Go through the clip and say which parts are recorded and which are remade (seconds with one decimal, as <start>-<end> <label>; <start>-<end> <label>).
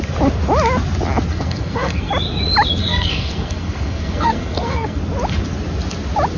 0.0-1.3 recorded; 1.3-2.1 remade; 2.1-2.8 recorded; 2.8-5.0 remade; 5.0-6.4 recorded